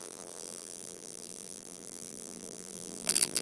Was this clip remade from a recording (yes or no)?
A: yes